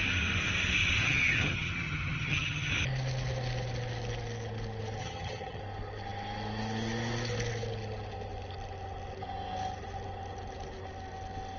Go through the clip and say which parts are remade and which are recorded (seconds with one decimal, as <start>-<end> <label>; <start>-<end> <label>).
0.0-1.0 recorded; 1.0-2.7 remade; 2.7-5.0 recorded; 5.0-5.6 remade; 5.6-11.6 recorded